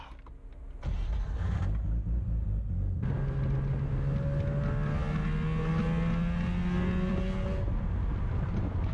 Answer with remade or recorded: recorded